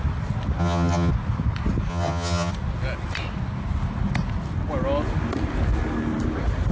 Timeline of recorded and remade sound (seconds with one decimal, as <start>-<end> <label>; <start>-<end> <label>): 0.0-0.6 recorded; 0.6-1.1 remade; 1.1-1.9 recorded; 1.9-2.5 remade; 2.5-6.7 recorded